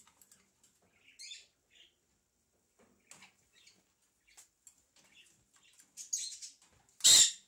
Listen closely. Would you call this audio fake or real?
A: real